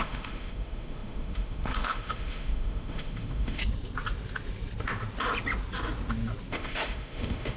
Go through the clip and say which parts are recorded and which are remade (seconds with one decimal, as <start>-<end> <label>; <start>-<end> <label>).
0.0-3.6 remade; 3.6-6.5 recorded; 6.5-7.6 remade